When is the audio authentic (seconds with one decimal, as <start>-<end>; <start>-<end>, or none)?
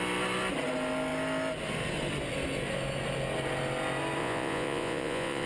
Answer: 0.0-4.2